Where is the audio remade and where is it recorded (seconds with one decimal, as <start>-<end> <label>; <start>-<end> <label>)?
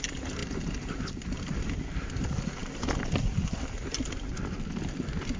0.0-5.4 recorded